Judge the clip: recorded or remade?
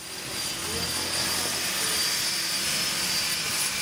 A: recorded